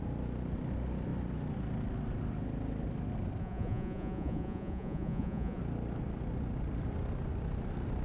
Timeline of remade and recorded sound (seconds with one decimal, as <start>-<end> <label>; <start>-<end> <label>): 0.0-3.4 recorded; 3.4-5.6 remade; 5.6-8.0 recorded